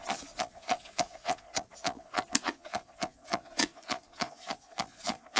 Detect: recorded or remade remade